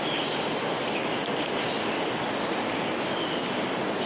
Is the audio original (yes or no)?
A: yes